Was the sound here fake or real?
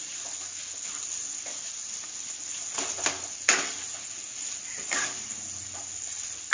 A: real